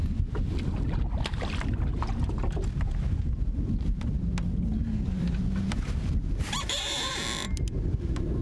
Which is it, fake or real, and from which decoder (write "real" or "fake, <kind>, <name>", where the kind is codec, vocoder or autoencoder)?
real